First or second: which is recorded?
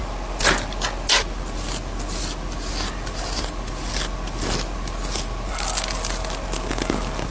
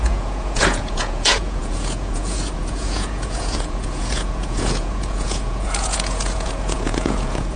first